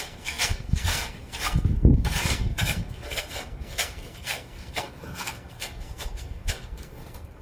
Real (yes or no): no